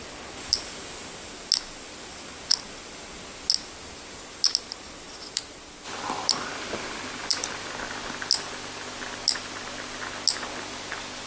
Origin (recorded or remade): recorded